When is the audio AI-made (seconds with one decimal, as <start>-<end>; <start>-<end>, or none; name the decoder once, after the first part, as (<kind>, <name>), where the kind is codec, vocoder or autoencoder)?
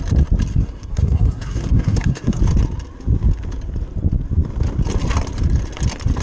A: 0.5-2.4 (codec, SNAC)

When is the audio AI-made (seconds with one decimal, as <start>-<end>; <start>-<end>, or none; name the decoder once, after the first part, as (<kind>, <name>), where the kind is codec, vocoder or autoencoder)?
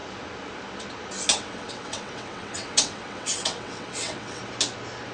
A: 1.3-4.4 (vocoder, WaveNeXt)